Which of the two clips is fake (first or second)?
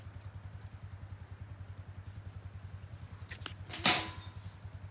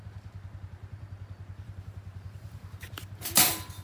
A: second